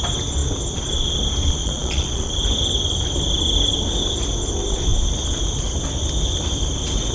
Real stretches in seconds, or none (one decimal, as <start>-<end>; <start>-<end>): 0.0-1.6; 2.3-7.1